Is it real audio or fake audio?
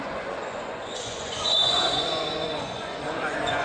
fake